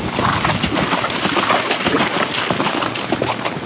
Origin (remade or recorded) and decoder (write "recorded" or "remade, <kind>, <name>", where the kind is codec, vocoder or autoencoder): recorded